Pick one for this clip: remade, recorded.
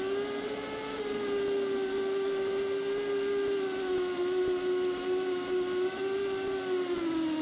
recorded